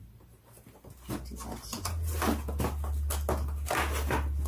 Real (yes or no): yes